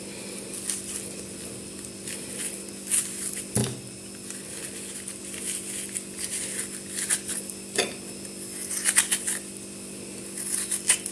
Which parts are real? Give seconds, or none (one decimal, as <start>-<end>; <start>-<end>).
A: 0.0-11.1

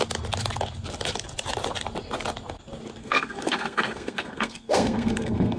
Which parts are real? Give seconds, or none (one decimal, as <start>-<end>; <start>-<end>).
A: 0.0-3.0

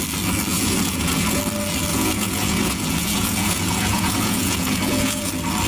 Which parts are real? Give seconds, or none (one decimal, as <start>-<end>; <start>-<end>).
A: 0.0-0.5; 1.4-1.9; 5.3-5.7